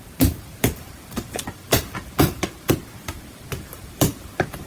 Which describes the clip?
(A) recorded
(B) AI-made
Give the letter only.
B